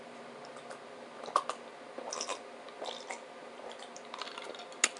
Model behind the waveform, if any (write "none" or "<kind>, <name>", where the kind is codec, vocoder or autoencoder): none